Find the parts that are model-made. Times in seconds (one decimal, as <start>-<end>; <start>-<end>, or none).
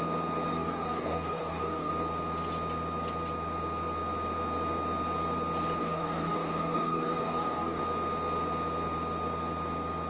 0.5-1.9; 5.8-7.8